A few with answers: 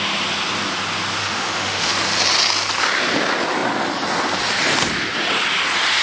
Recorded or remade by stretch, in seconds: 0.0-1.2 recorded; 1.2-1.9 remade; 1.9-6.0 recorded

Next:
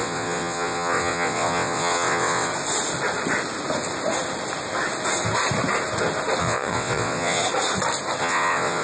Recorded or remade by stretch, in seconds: 0.0-2.5 remade; 2.5-6.4 recorded; 6.4-7.4 remade; 7.4-8.2 recorded; 8.2-8.8 remade

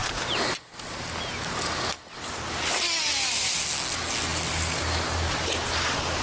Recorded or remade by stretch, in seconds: 0.0-6.2 recorded